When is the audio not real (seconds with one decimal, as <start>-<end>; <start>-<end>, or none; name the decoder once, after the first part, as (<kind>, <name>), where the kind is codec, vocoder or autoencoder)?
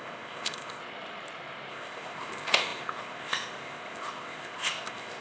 0.0-0.8 (codec, ZipCodec); 1.7-5.2